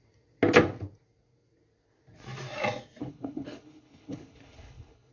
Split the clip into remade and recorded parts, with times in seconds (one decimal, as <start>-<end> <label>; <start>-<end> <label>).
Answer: 0.0-3.0 recorded; 3.0-5.1 remade